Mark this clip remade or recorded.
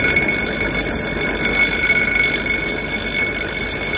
recorded